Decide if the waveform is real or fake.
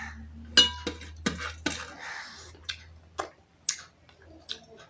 real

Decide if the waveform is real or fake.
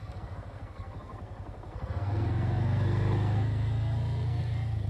fake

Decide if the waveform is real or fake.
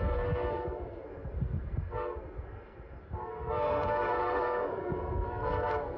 fake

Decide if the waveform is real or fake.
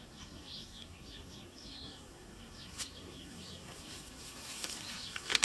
fake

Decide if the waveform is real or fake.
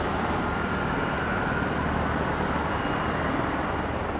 real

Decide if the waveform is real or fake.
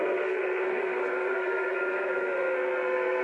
fake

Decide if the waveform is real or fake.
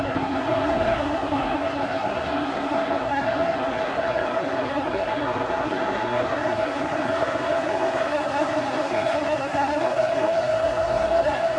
fake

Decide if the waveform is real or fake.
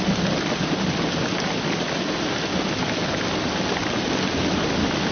real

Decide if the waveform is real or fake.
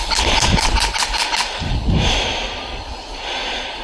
real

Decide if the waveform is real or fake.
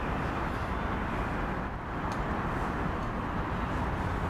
real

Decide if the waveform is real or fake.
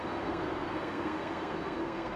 fake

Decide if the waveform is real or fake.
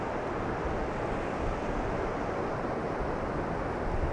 real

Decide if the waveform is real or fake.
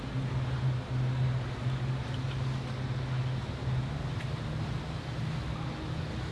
real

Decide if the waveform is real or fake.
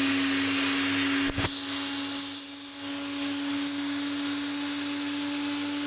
real